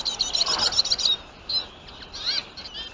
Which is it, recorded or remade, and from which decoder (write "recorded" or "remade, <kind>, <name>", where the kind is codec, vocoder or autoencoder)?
recorded